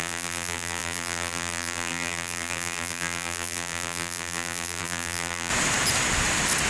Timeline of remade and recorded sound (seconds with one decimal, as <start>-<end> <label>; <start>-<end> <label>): 0.0-5.5 remade; 5.5-6.7 recorded